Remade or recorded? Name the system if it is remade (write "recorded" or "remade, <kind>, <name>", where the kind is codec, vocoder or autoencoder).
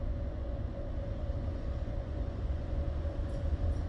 remade, vocoder, Vocos